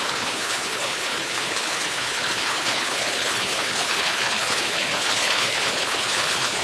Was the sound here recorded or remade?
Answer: remade